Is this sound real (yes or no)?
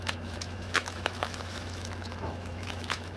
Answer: no